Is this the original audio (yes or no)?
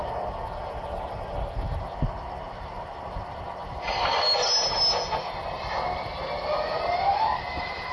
yes